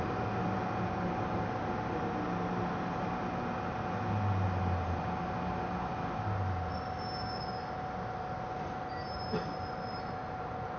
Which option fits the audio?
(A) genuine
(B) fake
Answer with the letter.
A